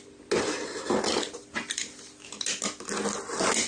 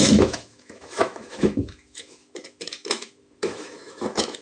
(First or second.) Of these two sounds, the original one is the first